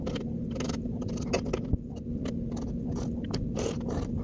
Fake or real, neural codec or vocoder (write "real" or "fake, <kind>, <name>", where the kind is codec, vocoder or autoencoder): real